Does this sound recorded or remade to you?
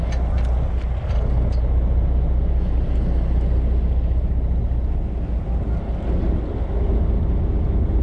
recorded